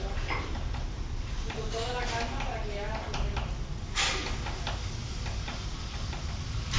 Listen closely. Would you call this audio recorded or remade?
recorded